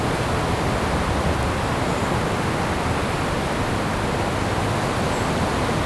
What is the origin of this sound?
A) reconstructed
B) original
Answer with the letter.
B